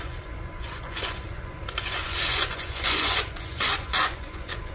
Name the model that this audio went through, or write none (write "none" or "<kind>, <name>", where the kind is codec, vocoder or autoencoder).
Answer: vocoder, Vocos